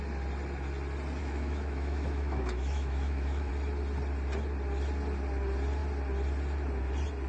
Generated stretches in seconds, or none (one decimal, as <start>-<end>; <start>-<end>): 1.2-3.5